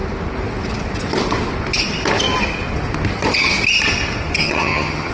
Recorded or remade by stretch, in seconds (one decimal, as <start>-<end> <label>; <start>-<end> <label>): 0.0-4.4 recorded; 4.4-5.1 remade